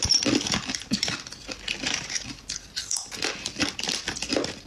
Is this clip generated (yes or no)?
no